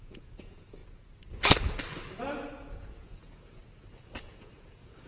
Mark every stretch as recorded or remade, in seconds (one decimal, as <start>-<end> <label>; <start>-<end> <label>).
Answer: 0.0-0.8 remade; 0.8-2.2 recorded; 2.2-3.6 remade; 3.6-4.2 recorded; 4.2-5.1 remade